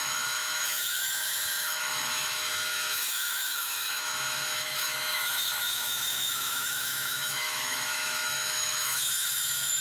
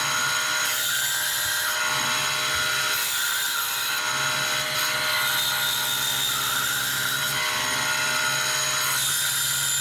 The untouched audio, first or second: second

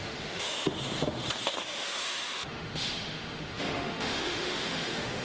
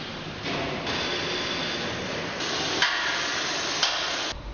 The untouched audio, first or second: second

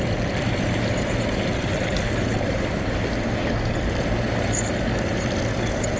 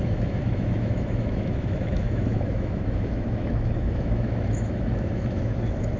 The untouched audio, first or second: first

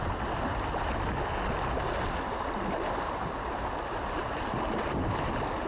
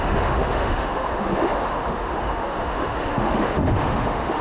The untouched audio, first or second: first